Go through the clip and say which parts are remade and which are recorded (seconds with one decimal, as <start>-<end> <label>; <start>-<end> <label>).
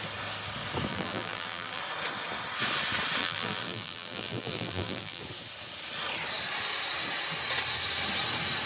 0.0-0.9 recorded; 0.9-1.8 remade; 1.8-3.2 recorded; 3.2-5.2 remade; 5.2-8.7 recorded